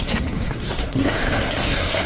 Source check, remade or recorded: remade